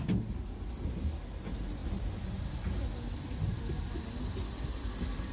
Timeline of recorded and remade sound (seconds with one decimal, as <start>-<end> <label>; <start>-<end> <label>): 0.0-5.3 recorded